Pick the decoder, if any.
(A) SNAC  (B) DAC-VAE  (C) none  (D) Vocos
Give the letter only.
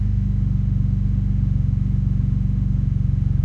B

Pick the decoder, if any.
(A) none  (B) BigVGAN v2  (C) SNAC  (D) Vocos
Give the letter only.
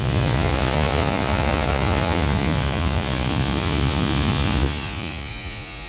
D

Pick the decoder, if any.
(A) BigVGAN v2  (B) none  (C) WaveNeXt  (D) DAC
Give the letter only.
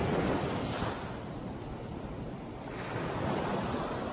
B